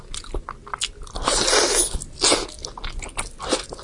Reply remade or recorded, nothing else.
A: recorded